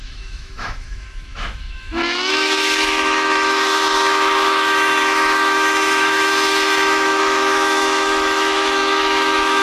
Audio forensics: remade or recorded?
remade